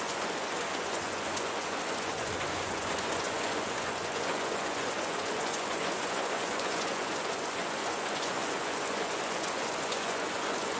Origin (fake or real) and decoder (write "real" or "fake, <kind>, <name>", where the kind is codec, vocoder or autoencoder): fake, vocoder, Vocos